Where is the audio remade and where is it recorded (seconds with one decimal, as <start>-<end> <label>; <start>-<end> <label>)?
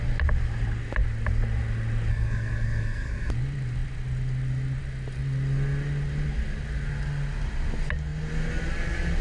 0.0-2.1 recorded; 2.1-3.3 remade; 3.3-9.2 recorded